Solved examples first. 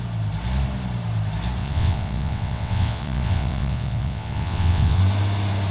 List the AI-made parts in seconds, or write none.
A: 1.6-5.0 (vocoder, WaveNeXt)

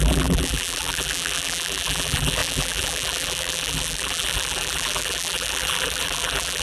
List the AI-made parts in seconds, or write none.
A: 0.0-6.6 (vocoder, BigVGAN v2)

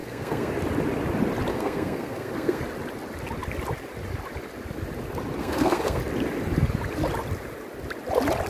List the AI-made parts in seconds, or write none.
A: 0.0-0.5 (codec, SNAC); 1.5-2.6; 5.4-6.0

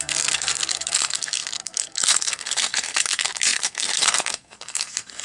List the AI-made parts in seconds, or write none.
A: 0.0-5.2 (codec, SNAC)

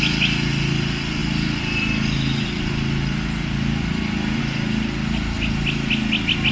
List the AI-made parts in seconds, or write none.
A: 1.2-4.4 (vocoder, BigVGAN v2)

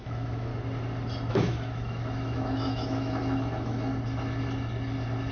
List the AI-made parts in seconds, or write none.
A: 0.0-0.5 (autoencoder, DAC-VAE); 1.3-3.9